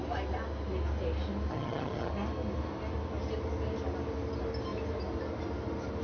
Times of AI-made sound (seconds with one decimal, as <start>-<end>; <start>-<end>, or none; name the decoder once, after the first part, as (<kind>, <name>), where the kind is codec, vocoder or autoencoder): 1.5-2.1 (vocoder, HiFi-GAN)